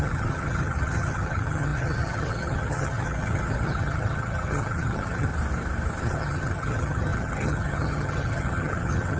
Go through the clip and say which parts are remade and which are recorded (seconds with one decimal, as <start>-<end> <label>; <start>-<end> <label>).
0.0-5.3 remade; 5.3-6.0 recorded; 6.0-9.2 remade